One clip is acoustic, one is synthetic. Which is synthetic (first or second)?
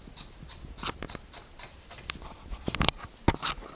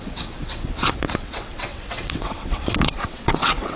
second